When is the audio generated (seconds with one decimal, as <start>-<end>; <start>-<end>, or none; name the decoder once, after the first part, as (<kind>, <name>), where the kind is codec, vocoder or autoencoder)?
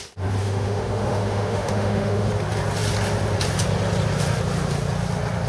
0.4-2.3 (autoencoder, DAC-VAE)